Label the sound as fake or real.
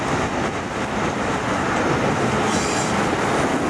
real